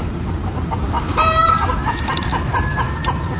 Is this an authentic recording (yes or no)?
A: no